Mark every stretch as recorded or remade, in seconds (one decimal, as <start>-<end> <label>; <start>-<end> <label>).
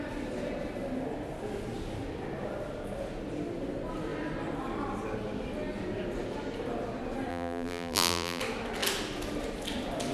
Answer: 0.0-7.3 recorded; 7.3-8.4 remade; 8.4-10.1 recorded